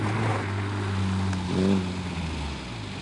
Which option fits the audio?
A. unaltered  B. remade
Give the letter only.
A